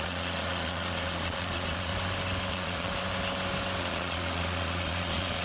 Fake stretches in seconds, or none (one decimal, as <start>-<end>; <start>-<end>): 0.0-1.9; 2.5-2.9; 3.8-5.4